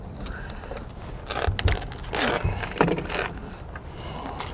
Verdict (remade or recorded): recorded